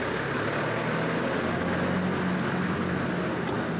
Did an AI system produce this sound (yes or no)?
no